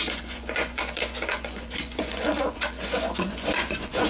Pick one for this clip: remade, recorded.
remade